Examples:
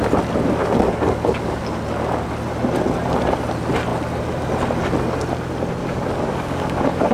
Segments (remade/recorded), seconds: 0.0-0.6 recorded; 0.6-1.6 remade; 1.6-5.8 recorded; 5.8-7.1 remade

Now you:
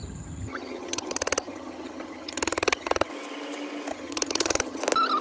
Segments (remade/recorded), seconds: 0.0-3.1 remade; 3.1-3.9 recorded; 3.9-4.8 remade; 4.8-5.2 recorded